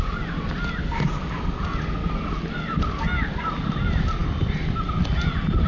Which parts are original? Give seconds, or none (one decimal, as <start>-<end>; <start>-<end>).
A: 0.0-5.7